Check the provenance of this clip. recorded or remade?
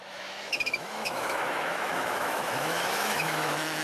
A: remade